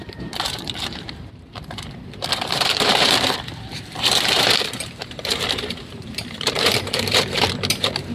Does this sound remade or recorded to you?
remade